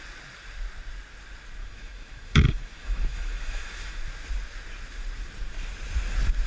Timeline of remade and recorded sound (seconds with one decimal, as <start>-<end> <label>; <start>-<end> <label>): 0.0-1.6 recorded; 1.6-4.0 remade; 4.0-6.5 recorded